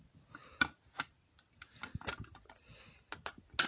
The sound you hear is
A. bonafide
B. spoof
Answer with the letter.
A